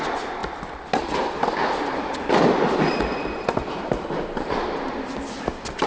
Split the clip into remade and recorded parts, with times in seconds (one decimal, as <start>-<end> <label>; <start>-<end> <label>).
0.0-5.9 recorded

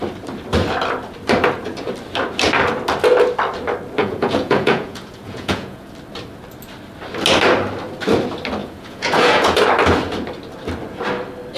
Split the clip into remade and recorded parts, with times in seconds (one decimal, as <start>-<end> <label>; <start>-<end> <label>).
0.0-4.0 recorded; 4.0-5.9 remade; 5.9-8.6 recorded; 8.6-9.6 remade; 9.6-11.6 recorded

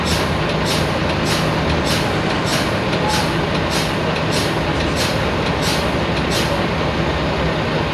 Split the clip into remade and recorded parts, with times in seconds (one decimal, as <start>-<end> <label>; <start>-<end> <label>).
0.0-7.9 recorded

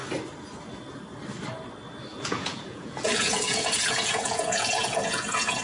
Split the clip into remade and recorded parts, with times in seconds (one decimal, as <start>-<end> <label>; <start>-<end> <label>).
0.0-2.1 recorded; 2.1-5.6 remade

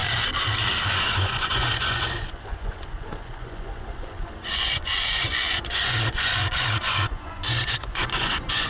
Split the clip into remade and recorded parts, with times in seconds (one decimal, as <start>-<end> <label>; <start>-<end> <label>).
0.0-0.9 recorded; 0.9-8.7 remade

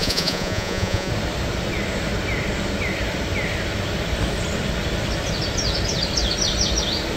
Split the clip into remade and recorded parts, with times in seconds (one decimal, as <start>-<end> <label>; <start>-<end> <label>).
0.0-1.1 remade; 1.1-7.2 recorded

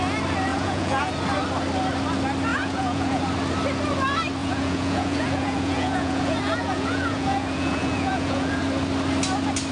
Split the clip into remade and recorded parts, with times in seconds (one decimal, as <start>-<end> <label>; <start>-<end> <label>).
0.0-0.5 recorded; 0.5-1.1 remade; 1.1-2.5 recorded; 2.5-3.2 remade; 3.2-4.4 recorded; 4.4-8.6 remade; 8.6-9.7 recorded

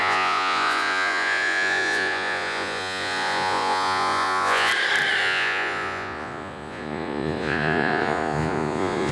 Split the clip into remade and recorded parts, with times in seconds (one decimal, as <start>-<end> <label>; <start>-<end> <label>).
0.0-4.7 remade; 4.7-5.2 recorded; 5.2-9.1 remade